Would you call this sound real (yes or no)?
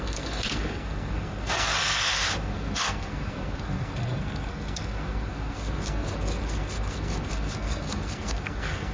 no